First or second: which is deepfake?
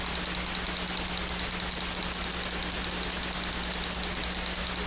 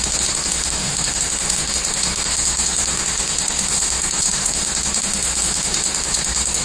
second